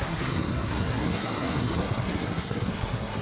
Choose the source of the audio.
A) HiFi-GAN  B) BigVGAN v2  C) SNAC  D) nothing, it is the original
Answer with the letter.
C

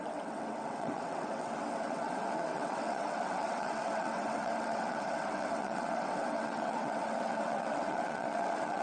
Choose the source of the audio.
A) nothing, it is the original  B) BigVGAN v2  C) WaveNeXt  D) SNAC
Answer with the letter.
C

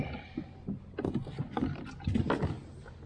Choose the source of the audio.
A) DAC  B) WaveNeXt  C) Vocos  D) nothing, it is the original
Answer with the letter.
D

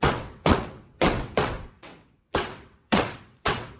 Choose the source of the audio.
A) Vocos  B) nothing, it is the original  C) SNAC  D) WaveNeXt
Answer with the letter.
D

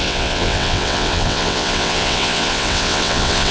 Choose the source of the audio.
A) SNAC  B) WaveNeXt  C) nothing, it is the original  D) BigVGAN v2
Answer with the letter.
B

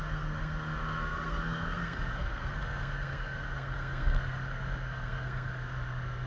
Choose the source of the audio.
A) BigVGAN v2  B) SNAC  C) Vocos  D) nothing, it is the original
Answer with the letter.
B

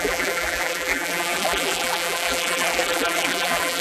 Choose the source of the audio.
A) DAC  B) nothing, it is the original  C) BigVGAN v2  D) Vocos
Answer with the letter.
C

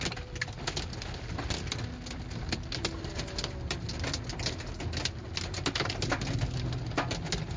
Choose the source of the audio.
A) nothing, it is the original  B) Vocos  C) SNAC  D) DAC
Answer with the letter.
A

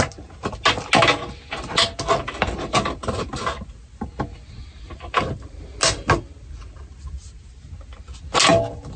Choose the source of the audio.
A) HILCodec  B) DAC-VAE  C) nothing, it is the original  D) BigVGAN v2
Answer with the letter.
C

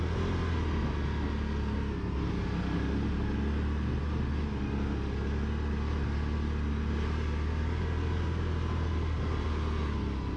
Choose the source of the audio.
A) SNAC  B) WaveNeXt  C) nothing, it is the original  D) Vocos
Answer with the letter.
C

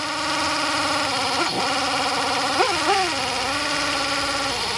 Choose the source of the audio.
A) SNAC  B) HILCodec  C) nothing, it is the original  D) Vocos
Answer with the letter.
C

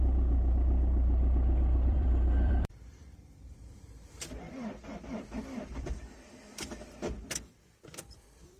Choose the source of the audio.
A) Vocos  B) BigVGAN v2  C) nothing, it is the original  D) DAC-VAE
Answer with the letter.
B